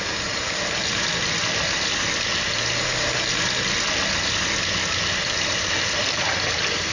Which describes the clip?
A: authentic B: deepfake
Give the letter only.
A